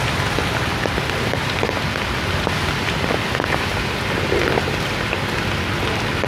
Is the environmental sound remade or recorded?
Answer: recorded